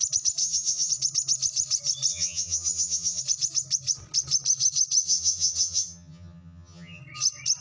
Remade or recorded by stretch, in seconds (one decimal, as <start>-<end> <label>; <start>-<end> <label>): 0.0-0.4 recorded; 0.4-0.9 remade; 0.9-2.1 recorded; 2.1-3.2 remade; 3.2-5.0 recorded; 5.0-7.0 remade; 7.0-7.6 recorded